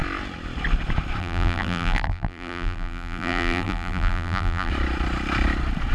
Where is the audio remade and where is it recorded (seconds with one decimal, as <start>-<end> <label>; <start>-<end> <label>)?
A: 0.0-1.2 recorded; 1.2-4.7 remade; 4.7-5.9 recorded